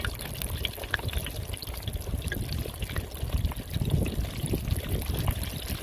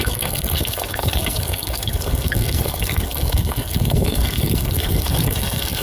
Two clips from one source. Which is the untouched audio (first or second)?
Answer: first